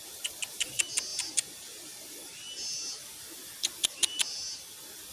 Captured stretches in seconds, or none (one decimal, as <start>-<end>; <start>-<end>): 0.0-5.1